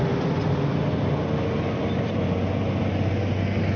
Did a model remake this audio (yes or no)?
no